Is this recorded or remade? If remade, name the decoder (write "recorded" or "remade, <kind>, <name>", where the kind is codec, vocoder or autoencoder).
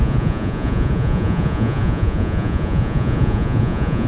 remade, vocoder, Vocos